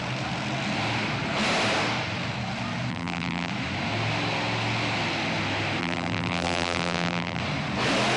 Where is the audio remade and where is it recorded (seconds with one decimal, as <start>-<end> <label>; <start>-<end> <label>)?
0.0-2.9 recorded; 2.9-3.5 remade; 3.5-5.8 recorded; 5.8-7.4 remade; 7.4-8.2 recorded